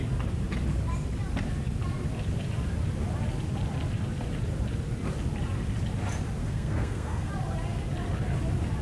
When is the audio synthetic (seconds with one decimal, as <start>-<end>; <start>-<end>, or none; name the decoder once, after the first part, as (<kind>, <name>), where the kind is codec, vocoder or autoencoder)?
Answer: 6.4-7.3 (codec, SNAC)

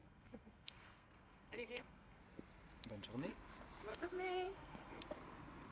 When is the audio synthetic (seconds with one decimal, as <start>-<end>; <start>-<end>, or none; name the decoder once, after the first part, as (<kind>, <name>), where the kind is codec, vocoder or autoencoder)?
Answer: 0.0-2.2 (codec, SNAC); 3.9-5.0